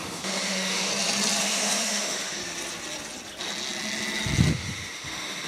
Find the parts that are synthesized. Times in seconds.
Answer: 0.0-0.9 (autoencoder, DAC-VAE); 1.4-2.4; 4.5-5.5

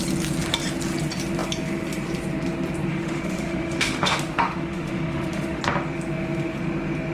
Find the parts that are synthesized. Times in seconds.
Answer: 2.9-5.6 (autoencoder, DAC-VAE)

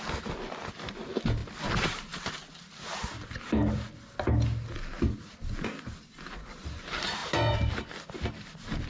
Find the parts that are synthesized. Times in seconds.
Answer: none

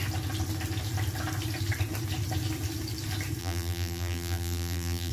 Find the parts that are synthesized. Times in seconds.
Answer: 3.4-5.1 (vocoder, BigVGAN v2)

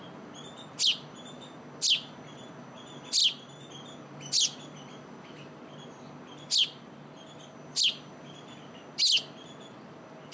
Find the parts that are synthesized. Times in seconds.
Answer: none

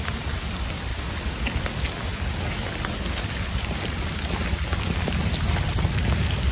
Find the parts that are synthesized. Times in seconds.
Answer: 0.0-0.9 (vocoder, BigVGAN v2); 1.6-6.5